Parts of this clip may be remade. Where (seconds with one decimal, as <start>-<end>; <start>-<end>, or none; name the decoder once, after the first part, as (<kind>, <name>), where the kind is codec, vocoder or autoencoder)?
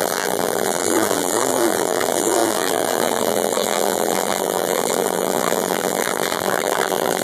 0.0-7.2 (vocoder, BigVGAN v2)